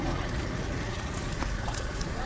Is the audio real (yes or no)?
no